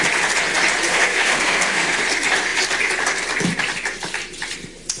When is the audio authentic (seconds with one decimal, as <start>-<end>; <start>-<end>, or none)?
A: 0.0-0.9; 2.0-5.0